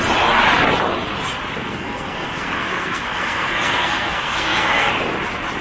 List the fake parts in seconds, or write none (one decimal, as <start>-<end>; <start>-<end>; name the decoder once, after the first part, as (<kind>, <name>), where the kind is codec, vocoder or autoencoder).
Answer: 1.6-4.9 (codec, SNAC)